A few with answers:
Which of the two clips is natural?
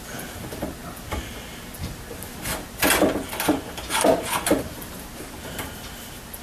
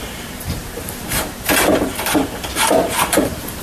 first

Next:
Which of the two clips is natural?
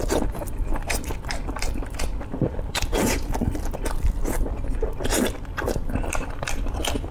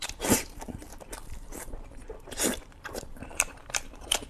first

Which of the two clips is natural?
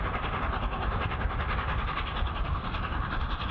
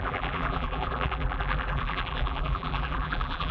first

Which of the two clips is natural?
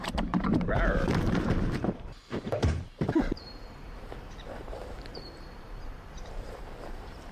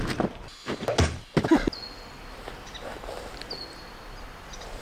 second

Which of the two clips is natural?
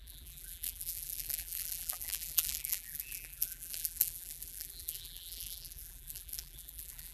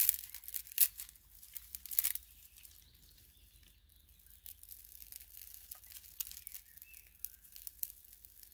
second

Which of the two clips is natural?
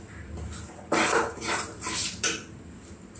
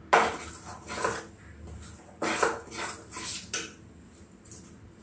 second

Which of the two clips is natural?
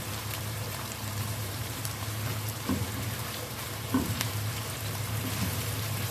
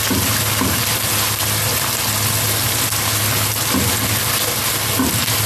second